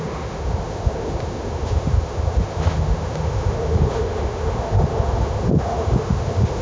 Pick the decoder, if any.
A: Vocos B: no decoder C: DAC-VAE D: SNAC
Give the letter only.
C